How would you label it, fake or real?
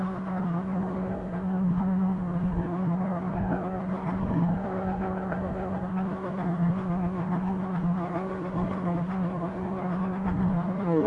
fake